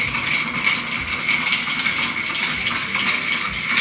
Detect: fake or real real